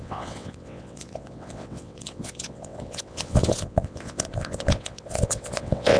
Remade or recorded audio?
remade